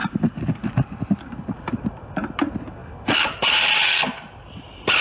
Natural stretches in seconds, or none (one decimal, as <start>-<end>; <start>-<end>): 0.0-5.0